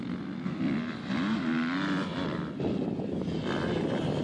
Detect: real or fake real